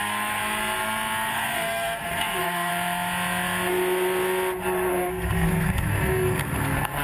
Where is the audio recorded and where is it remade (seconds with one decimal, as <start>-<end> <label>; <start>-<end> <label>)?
0.0-0.4 remade; 0.4-1.3 recorded; 1.3-2.7 remade; 2.7-4.9 recorded; 4.9-7.0 remade